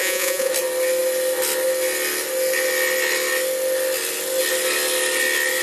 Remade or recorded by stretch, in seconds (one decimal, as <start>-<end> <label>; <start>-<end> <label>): 0.0-0.5 remade; 0.5-5.6 recorded

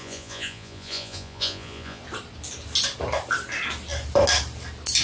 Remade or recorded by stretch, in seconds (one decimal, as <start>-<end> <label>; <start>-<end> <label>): 0.0-2.0 remade; 2.0-5.0 recorded

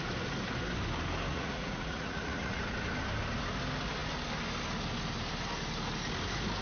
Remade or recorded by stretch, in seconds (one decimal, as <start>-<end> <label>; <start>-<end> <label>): 0.0-1.3 recorded; 1.3-2.6 remade; 2.6-6.6 recorded

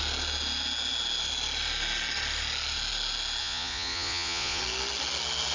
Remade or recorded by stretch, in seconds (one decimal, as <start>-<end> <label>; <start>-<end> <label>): 0.0-3.4 recorded; 3.4-4.6 remade; 4.6-5.5 recorded

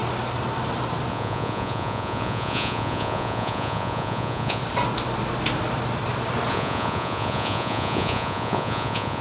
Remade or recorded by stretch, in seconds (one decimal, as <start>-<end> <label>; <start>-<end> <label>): 0.0-1.1 recorded; 1.1-4.6 remade; 4.6-6.5 recorded; 6.5-9.2 remade

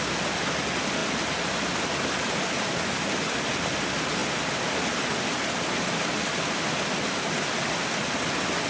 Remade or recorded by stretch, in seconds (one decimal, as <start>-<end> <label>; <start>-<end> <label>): 0.0-8.7 recorded

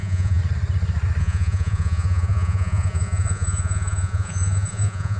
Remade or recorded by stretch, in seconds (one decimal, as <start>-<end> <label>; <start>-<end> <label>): 0.0-0.4 remade; 0.4-1.2 recorded; 1.2-5.2 remade

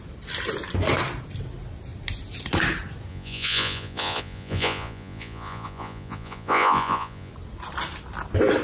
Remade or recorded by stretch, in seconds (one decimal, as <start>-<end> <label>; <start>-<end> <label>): 0.0-3.1 recorded; 3.1-7.3 remade; 7.3-8.6 recorded